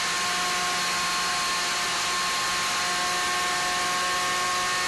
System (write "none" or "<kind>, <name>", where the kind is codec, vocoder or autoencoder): none